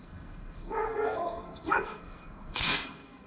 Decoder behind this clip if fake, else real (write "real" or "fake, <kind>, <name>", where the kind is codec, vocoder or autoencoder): fake, codec, SNAC